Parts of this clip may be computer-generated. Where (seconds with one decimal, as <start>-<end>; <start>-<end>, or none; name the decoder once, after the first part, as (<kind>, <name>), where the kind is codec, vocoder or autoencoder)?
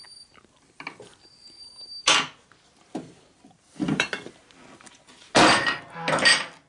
1.8-5.8 (vocoder, BigVGAN v2)